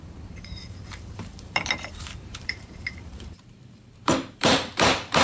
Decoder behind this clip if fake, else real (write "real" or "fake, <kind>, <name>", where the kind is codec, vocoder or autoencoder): fake, vocoder, BigVGAN v2